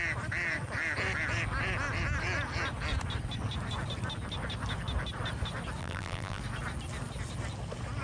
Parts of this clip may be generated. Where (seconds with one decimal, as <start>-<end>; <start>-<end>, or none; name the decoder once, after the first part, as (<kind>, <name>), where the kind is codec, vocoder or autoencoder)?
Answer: 5.8-6.4 (vocoder, BigVGAN v2)

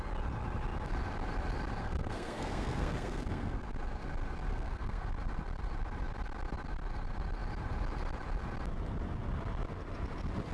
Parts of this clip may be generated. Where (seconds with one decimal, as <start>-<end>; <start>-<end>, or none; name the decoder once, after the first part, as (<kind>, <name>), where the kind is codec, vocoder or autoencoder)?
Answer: 1.8-3.7 (codec, SNAC); 4.5-5.0